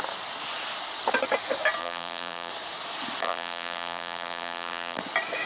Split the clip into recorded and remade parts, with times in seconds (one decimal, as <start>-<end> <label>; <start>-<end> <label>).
0.0-1.8 recorded; 1.8-2.5 remade; 2.5-3.2 recorded; 3.2-5.0 remade; 5.0-5.5 recorded